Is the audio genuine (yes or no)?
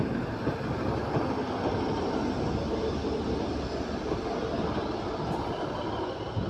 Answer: yes